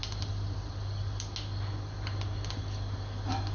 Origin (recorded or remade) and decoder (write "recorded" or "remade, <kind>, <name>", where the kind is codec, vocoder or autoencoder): recorded